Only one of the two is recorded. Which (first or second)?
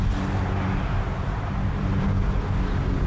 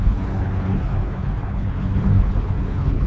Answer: first